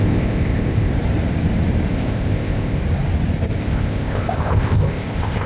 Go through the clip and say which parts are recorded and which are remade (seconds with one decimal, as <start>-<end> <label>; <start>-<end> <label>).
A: 0.0-0.9 remade; 0.9-1.9 recorded; 1.9-2.8 remade; 2.8-3.6 recorded; 3.6-5.5 remade